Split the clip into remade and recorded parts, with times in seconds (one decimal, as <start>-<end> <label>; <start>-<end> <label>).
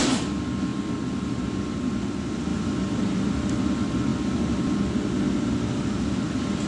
0.0-2.5 recorded; 2.5-3.2 remade; 3.2-6.7 recorded